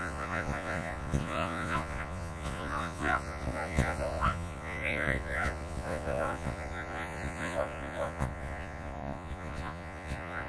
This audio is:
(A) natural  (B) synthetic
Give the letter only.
B